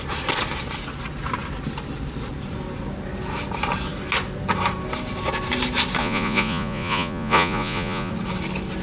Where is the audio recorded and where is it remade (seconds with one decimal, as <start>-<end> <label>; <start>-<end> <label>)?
0.0-6.0 recorded; 6.0-8.1 remade; 8.1-8.8 recorded